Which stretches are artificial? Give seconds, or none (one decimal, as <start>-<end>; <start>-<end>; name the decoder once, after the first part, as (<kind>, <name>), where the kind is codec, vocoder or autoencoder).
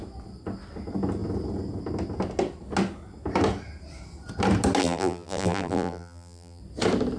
4.8-6.6 (vocoder, BigVGAN v2)